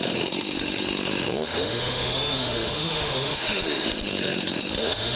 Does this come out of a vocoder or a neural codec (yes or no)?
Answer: yes